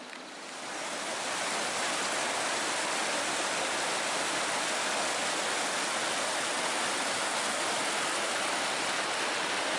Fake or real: real